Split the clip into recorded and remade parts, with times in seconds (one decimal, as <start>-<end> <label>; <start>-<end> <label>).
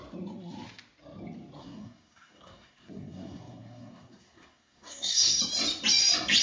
0.0-1.6 recorded; 1.6-5.4 remade; 5.4-6.4 recorded